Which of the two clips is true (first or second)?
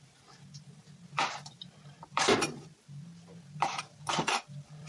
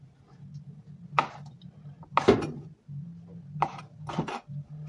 second